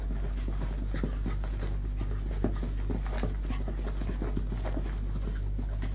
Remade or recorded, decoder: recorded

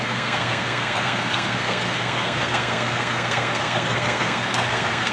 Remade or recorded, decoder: remade, codec, SNAC